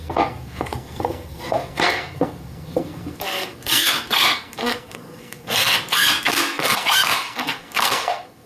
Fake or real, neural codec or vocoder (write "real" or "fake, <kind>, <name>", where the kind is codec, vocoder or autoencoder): fake, codec, SNAC